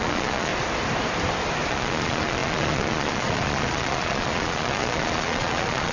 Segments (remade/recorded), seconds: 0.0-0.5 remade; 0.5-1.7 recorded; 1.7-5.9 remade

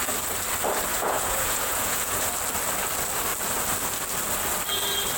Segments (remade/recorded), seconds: 0.0-0.9 recorded; 0.9-2.3 remade; 2.3-5.2 recorded

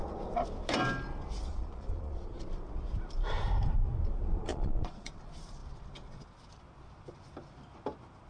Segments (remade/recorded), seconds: 0.0-1.5 recorded; 1.5-2.4 remade; 2.4-4.5 recorded; 4.5-5.1 remade; 5.1-8.3 recorded

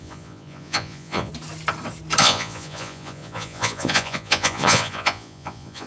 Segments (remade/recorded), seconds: 0.0-1.3 remade; 1.3-2.2 recorded; 2.2-5.9 remade

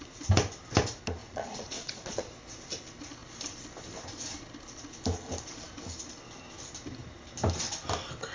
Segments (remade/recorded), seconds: 0.0-1.2 recorded; 1.2-2.2 remade; 2.2-8.3 recorded

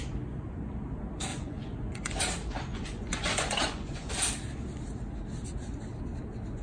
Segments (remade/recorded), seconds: 0.0-1.3 recorded; 1.3-2.2 remade; 2.2-2.7 recorded; 2.7-4.1 remade; 4.1-6.6 recorded